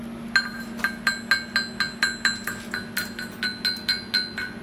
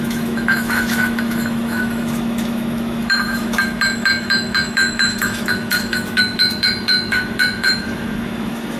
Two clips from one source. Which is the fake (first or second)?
second